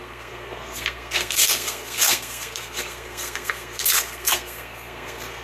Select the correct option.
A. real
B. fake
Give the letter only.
B